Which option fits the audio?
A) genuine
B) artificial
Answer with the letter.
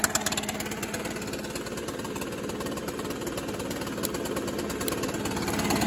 A